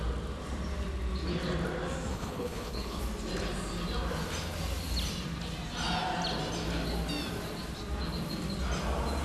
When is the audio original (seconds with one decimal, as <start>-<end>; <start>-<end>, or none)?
0.0-2.1; 3.0-9.2